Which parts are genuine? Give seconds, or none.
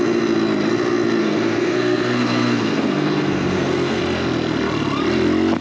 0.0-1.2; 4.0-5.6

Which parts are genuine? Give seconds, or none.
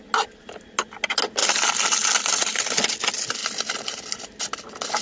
0.0-5.0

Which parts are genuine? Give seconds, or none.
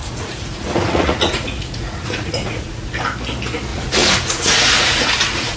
2.9-3.7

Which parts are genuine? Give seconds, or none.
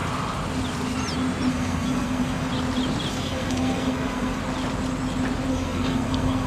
0.0-1.5; 2.5-3.1; 4.4-5.5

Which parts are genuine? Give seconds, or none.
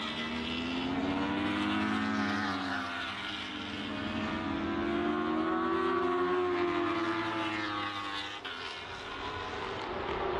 0.0-10.4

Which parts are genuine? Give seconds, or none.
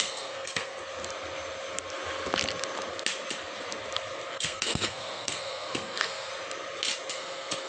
0.8-4.3; 6.3-7.1